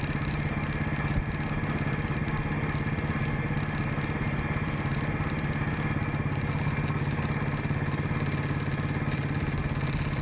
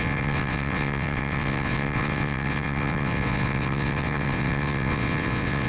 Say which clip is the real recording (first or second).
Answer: first